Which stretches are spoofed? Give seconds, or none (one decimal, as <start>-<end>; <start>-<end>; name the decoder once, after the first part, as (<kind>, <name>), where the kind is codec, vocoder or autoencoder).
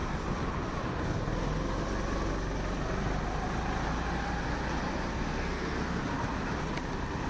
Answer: 5.1-6.0 (codec, SNAC)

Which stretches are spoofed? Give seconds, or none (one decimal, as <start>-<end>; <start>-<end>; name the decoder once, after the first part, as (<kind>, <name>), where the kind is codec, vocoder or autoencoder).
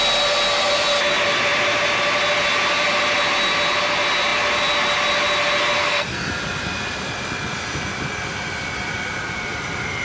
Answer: 5.8-6.3 (codec, SNAC)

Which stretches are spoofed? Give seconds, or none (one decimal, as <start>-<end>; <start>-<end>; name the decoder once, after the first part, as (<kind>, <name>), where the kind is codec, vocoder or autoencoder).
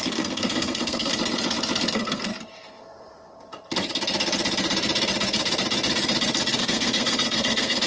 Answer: 0.0-1.1 (codec, SNAC); 1.9-2.3; 6.6-7.9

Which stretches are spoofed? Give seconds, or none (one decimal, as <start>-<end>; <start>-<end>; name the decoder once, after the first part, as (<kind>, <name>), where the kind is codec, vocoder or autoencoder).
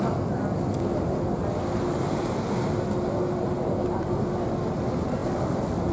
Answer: none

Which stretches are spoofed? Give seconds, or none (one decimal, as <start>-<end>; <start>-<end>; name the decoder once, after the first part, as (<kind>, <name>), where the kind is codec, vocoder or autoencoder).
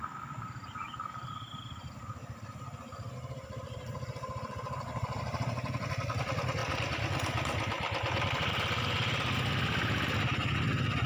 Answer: none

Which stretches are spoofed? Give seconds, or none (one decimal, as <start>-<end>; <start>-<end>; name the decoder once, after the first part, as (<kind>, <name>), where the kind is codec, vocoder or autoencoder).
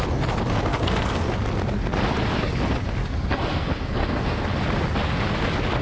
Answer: 0.7-1.3 (codec, SNAC); 3.0-4.4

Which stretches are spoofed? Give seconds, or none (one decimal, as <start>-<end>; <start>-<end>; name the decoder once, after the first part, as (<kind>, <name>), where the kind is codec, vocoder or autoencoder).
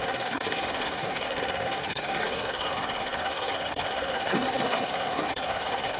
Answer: 0.0-6.0 (codec, SNAC)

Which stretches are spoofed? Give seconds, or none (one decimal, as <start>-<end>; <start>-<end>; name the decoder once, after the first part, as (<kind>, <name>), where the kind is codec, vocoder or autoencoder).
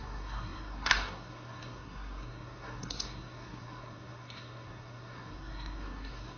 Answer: 0.0-6.4 (codec, SNAC)